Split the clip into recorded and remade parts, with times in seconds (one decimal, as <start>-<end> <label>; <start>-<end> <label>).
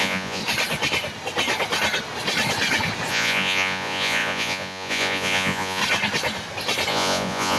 0.0-0.4 remade; 0.4-3.1 recorded; 3.1-5.8 remade; 5.8-6.9 recorded; 6.9-7.6 remade